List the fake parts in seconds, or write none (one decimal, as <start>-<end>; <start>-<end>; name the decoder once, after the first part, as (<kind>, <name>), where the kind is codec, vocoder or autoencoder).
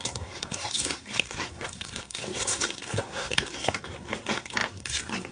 0.0-5.3 (codec, SNAC)